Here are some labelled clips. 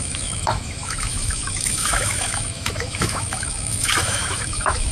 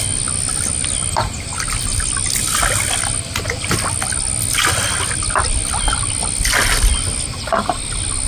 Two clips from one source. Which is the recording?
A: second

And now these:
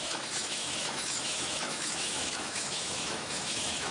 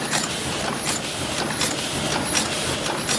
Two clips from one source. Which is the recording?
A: second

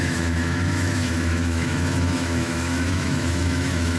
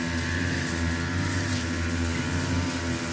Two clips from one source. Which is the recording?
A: second